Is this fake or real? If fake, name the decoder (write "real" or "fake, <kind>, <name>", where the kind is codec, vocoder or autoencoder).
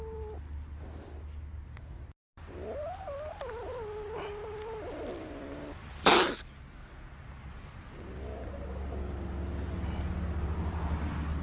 real